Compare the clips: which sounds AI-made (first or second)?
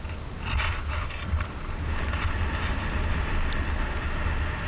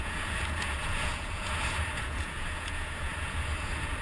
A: second